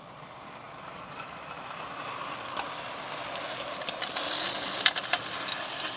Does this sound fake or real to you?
real